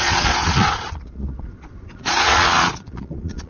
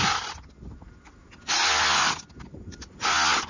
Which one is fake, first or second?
first